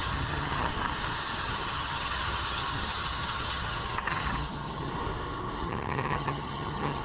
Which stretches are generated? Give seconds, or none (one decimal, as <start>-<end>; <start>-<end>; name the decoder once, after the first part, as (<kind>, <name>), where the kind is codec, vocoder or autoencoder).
0.0-0.7 (vocoder, HiFi-GAN); 1.4-4.9; 5.6-7.0